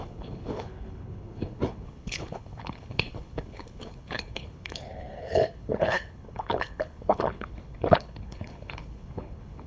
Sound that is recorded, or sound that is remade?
remade